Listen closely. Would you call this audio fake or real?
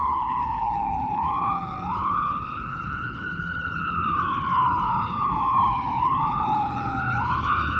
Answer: fake